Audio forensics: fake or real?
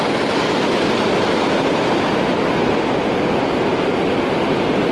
real